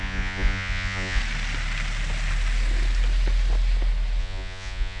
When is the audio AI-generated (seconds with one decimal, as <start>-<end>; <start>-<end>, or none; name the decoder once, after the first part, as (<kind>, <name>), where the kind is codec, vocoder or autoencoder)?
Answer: 0.0-1.2 (vocoder, Vocos); 4.2-5.0